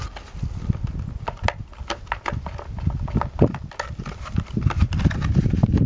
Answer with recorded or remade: recorded